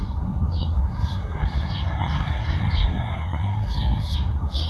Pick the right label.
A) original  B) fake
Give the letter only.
B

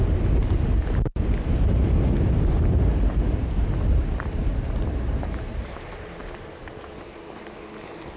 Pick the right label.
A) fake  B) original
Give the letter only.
B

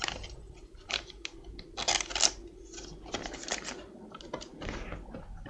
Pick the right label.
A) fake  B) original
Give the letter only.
B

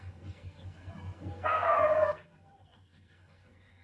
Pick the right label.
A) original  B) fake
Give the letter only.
B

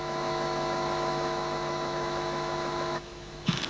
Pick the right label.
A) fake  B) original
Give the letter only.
A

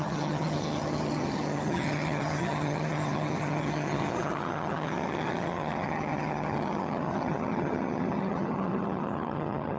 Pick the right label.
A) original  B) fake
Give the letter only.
B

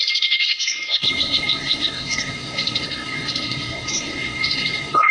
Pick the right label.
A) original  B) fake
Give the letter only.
B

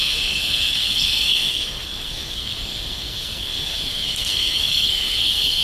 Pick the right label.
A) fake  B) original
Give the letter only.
A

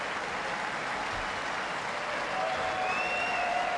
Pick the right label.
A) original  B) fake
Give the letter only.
A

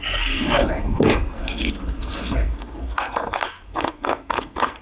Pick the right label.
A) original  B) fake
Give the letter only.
B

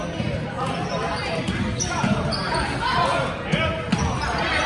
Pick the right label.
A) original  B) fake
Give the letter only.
A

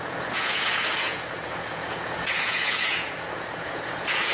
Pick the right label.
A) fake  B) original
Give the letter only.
A